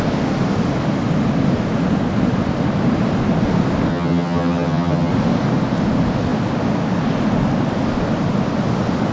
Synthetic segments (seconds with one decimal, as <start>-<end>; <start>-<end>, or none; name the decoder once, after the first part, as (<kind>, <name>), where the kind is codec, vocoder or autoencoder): 3.9-5.1 (vocoder, HiFi-GAN)